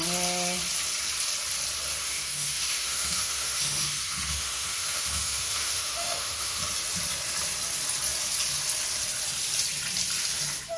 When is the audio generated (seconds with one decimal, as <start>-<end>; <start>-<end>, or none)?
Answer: 2.0-6.6